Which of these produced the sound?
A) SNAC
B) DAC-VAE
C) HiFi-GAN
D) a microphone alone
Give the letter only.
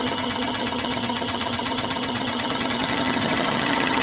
C